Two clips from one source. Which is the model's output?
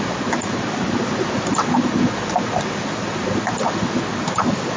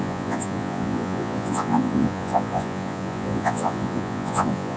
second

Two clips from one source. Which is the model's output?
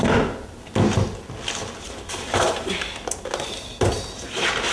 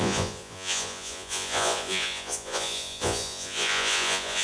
second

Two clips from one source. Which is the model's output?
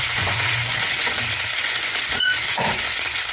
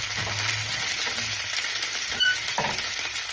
first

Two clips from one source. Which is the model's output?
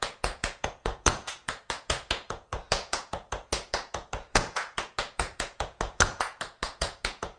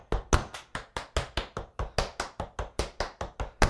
first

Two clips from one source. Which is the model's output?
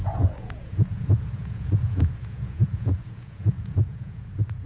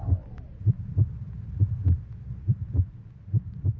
first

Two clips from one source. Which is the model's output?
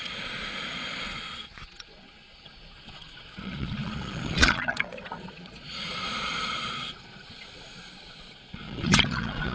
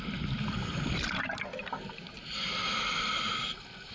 first